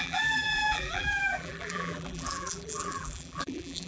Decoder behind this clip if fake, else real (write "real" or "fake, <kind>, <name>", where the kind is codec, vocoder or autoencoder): fake, vocoder, BigVGAN v2